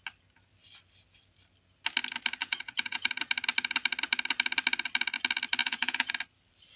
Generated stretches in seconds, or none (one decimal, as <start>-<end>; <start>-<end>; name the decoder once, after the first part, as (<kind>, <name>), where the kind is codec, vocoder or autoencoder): 2.4-3.1 (vocoder, Vocos); 5.6-6.1